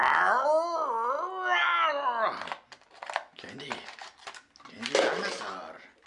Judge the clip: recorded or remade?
recorded